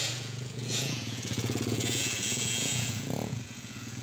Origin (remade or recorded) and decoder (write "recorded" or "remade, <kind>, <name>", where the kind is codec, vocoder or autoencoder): remade, vocoder, Vocos